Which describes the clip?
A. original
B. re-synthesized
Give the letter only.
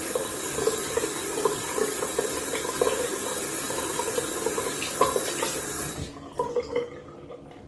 A